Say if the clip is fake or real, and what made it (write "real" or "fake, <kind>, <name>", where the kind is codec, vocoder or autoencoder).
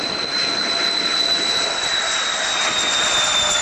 real